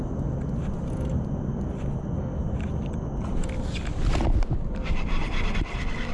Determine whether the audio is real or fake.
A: real